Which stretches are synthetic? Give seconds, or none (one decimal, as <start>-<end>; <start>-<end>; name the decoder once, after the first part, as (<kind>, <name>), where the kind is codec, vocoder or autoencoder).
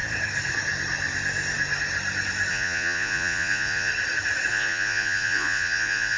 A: 2.5-3.9 (vocoder, Vocos); 4.5-6.2